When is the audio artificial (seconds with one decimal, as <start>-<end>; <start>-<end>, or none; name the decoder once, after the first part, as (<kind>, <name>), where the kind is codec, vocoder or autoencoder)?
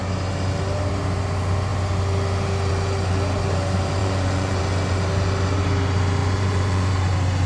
4.0-4.6 (vocoder, Vocos); 6.2-6.9